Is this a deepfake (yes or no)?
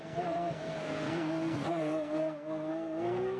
yes